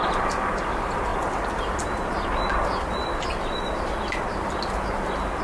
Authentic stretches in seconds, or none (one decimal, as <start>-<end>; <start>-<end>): 0.0-5.4

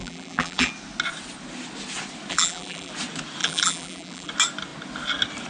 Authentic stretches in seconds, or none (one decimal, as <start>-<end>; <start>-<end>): 0.7-2.3; 2.9-3.4; 4.3-5.5

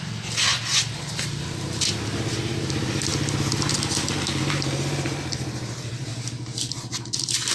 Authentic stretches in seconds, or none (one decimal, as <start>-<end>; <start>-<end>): 0.5-1.4; 3.1-4.4; 6.1-6.7

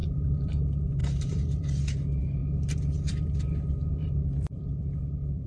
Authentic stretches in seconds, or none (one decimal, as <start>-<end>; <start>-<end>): 0.5-1.0; 1.8-2.4; 3.4-3.8

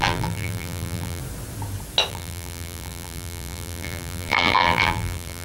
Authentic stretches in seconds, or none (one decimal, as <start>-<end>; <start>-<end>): 1.2-2.1

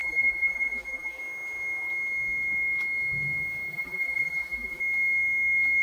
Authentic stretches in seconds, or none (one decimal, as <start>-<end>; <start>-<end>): 1.2-3.7; 4.8-5.8

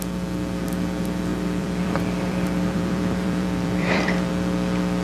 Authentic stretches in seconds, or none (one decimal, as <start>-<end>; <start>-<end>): 0.0-1.3; 4.3-5.0